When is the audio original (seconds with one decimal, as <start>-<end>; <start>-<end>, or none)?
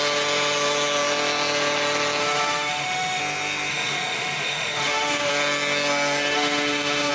0.0-2.2; 3.2-3.7; 5.3-6.3